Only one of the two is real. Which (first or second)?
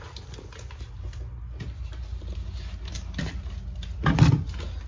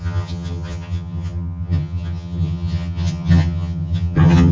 first